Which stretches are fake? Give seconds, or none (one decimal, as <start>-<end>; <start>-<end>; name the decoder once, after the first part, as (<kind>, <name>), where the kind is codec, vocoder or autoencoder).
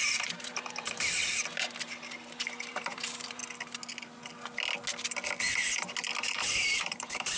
0.0-1.2 (vocoder, BigVGAN v2); 2.7-3.4; 6.3-7.4